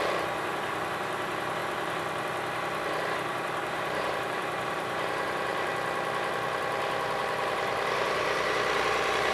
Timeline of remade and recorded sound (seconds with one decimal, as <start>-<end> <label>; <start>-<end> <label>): 0.0-1.6 remade; 1.6-3.0 recorded; 3.0-5.5 remade; 5.5-7.2 recorded; 7.2-9.3 remade